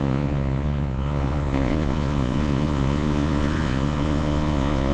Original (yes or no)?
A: no